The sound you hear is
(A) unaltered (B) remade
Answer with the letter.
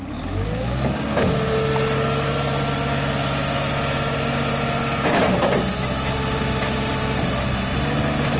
A